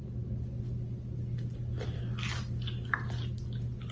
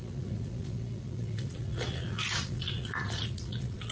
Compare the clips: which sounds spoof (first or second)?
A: second